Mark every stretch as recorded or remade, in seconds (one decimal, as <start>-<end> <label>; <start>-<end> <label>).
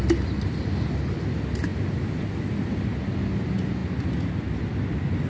0.0-5.3 recorded